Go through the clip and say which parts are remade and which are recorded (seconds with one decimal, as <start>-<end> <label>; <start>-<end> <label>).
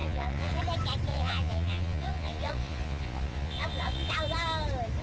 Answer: 0.0-0.6 remade; 0.6-1.1 recorded; 1.1-4.1 remade; 4.1-5.0 recorded